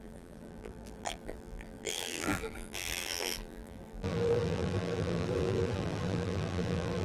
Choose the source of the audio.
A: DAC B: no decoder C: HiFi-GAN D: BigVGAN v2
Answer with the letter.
D